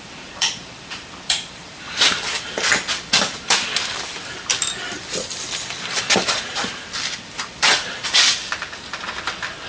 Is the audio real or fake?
fake